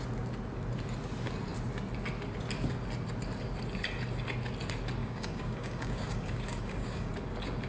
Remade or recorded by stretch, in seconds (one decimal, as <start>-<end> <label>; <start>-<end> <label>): 0.0-5.0 recorded; 5.0-7.1 remade; 7.1-7.7 recorded